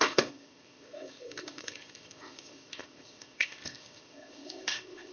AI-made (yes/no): yes